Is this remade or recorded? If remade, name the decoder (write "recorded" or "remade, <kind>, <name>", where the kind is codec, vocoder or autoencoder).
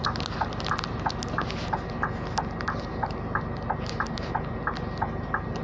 recorded